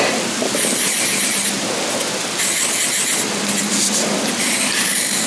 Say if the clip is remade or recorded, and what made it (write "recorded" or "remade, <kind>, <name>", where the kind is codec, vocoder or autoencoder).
recorded